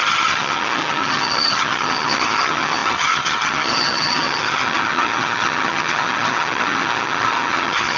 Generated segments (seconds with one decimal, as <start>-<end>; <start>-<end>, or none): 0.0-8.0